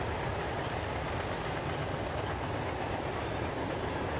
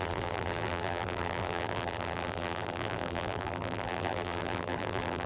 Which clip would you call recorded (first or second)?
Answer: first